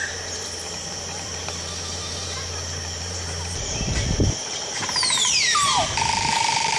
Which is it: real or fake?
fake